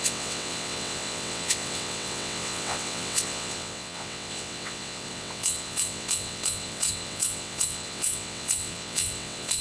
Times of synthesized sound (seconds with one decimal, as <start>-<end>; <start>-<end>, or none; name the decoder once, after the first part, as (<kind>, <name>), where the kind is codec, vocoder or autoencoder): 0.0-9.6 (vocoder, WaveNeXt)